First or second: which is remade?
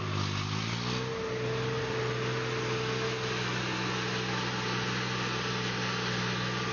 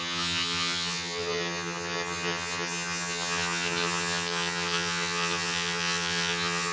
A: second